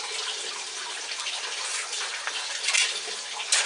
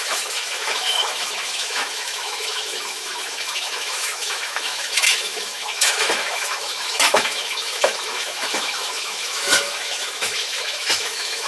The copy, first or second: second